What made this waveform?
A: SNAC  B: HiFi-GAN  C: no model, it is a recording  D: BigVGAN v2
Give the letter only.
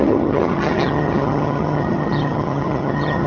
B